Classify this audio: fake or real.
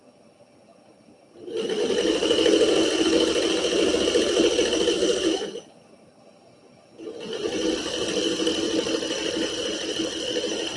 real